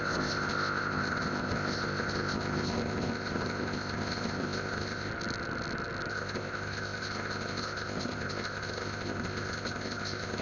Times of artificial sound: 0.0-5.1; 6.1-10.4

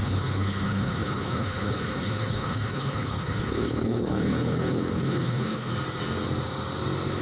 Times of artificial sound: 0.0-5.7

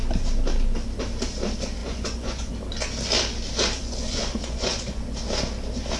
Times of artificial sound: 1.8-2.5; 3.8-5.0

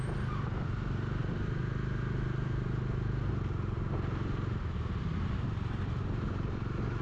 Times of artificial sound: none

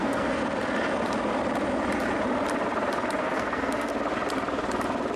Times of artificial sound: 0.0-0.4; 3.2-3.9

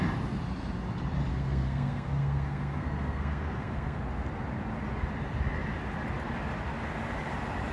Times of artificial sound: 1.3-4.0

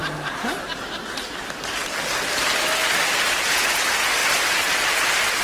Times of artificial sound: none